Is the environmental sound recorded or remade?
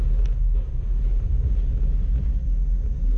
recorded